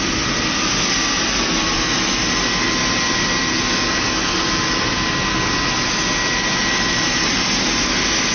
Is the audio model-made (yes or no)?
no